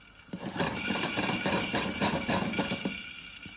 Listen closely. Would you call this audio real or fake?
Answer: fake